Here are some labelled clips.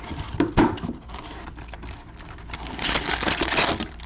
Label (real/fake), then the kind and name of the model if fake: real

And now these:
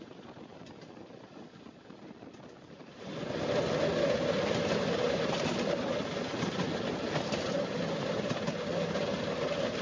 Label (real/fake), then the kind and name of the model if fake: real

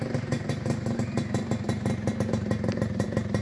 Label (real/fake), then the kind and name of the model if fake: real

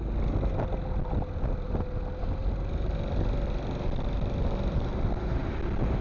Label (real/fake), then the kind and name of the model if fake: real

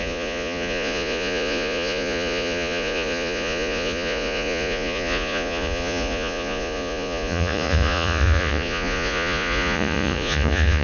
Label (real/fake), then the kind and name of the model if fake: fake, vocoder, Vocos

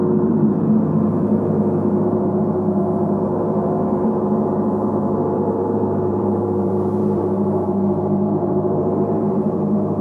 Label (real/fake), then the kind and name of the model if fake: fake, vocoder, BigVGAN v2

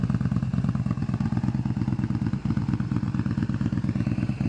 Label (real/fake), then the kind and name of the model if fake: real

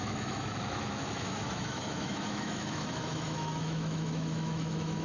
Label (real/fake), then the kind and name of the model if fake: fake, autoencoder, DAC-VAE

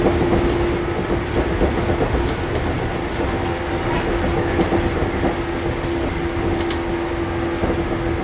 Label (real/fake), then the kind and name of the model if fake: real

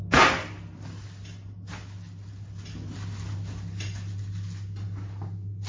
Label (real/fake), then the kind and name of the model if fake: real